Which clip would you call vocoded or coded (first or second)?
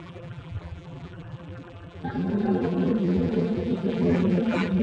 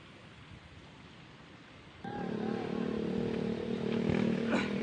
first